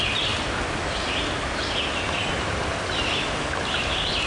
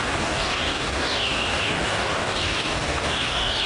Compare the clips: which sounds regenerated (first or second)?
second